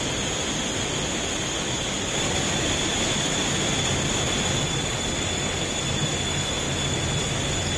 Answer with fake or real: real